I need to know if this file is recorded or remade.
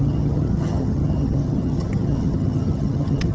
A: remade